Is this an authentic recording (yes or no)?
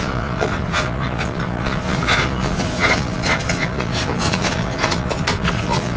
no